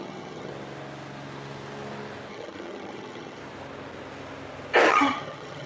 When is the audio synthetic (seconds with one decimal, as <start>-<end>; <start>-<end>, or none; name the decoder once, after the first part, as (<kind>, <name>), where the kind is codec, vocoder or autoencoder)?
0.0-0.5 (vocoder, HiFi-GAN); 2.3-3.4; 4.9-5.7